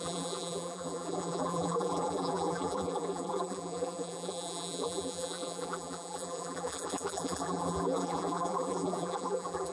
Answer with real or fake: fake